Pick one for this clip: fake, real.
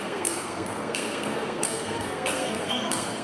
fake